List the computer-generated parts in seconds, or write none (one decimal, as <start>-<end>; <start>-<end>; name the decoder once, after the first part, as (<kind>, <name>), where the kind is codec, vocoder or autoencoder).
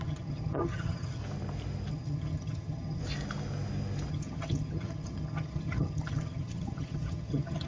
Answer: 0.0-1.2 (vocoder, HiFi-GAN); 1.9-3.0; 4.1-7.7